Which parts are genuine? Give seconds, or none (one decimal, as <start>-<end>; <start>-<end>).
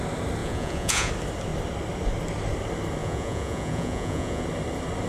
0.0-0.4; 1.1-3.0; 4.4-5.1